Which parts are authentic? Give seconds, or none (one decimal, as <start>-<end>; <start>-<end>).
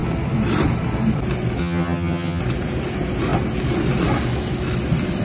0.0-1.6; 2.4-5.2